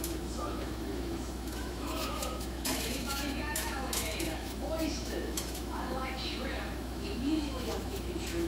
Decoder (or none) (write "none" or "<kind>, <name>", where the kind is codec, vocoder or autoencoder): autoencoder, DAC-VAE